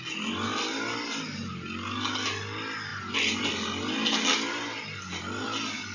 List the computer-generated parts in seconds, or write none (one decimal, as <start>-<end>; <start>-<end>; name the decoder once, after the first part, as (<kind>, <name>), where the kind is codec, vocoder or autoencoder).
none